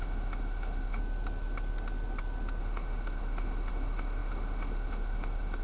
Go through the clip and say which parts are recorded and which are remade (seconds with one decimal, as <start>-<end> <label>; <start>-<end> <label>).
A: 0.0-1.0 remade; 1.0-2.6 recorded; 2.6-5.6 remade